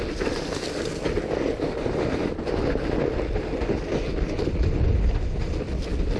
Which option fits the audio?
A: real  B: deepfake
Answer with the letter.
A